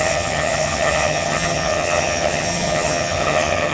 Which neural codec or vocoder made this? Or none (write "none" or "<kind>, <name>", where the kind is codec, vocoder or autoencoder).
vocoder, HiFi-GAN